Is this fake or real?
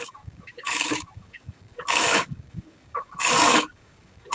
fake